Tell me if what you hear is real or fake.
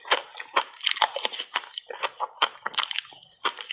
real